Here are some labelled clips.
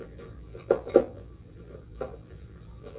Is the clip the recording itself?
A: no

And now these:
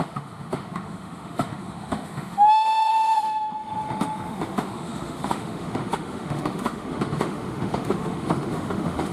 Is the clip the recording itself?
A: no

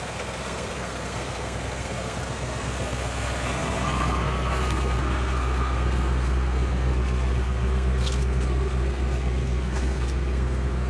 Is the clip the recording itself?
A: no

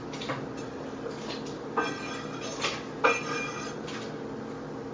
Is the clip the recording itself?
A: yes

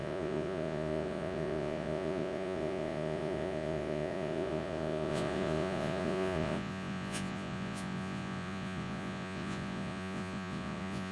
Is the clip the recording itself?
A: no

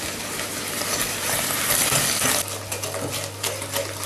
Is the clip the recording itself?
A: yes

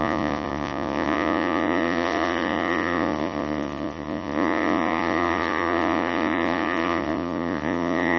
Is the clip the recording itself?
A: no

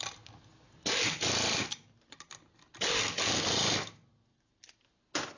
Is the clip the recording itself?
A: yes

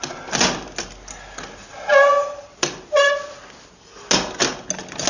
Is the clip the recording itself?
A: yes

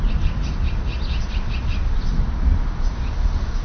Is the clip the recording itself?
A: yes